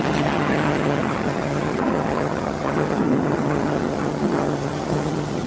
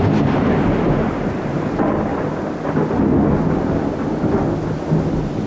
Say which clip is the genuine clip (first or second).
second